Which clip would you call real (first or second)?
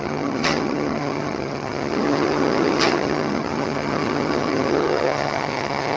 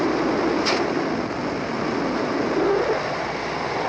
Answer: second